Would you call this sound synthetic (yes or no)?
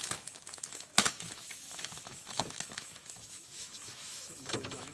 yes